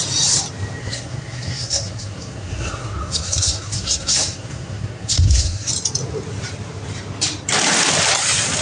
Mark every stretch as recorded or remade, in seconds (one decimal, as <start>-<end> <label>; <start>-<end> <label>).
0.0-0.8 recorded; 0.8-5.7 remade; 5.7-8.6 recorded